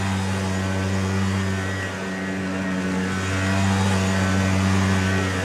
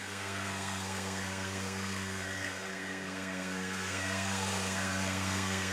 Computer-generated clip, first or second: second